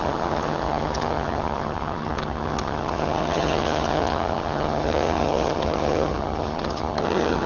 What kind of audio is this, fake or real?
fake